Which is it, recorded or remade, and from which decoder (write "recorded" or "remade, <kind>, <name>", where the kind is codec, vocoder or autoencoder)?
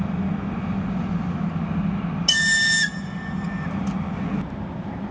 recorded